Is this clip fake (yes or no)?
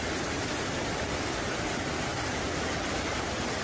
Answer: no